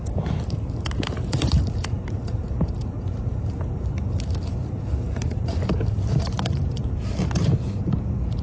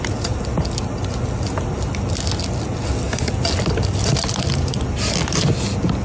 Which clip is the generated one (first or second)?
first